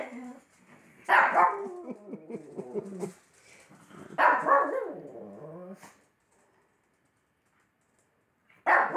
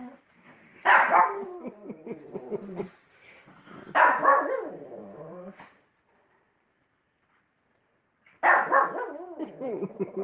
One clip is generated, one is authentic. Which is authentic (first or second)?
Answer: first